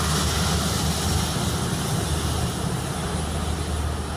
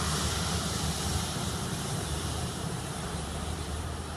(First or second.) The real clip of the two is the first